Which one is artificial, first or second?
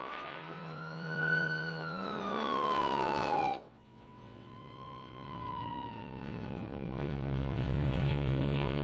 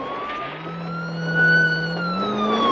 first